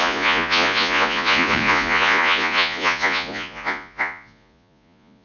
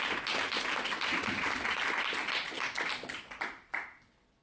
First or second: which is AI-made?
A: first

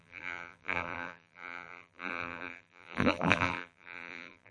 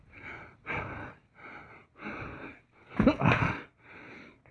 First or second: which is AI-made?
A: first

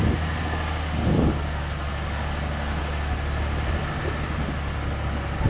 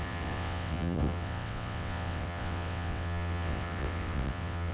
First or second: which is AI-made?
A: second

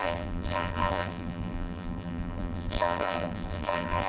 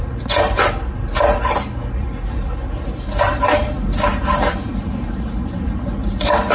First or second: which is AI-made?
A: first